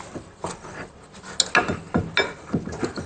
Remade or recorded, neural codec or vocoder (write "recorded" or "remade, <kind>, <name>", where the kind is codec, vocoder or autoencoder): recorded